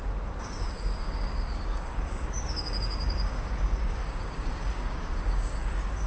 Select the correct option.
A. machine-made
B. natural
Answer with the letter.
A